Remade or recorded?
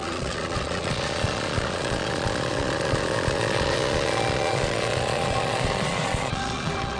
remade